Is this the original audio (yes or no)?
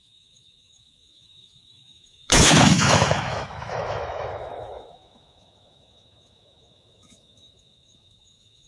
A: no